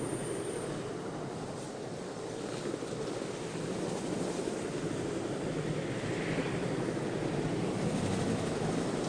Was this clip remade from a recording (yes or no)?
no